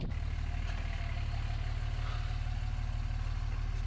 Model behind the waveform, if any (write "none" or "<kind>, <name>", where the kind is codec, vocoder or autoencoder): none